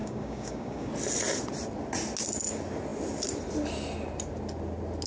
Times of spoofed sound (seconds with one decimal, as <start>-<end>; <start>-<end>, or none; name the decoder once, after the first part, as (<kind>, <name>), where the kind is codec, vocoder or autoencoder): 0.0-0.9 (codec, DAC)